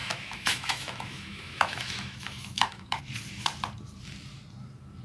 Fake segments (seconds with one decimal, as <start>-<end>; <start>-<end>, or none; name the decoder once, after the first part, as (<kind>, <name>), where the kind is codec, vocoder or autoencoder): 0.0-3.0 (autoencoder, DAC-VAE)